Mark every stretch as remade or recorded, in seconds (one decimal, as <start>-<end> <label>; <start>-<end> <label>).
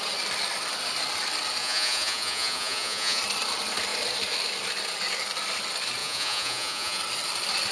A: 0.0-1.6 recorded; 1.6-3.2 remade; 3.2-6.0 recorded; 6.0-7.0 remade; 7.0-7.7 recorded